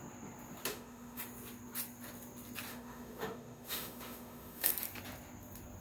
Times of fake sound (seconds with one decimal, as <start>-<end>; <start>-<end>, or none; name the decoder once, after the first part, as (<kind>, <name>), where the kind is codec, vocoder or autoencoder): 0.7-1.2 (autoencoder, DAC-VAE); 2.7-4.7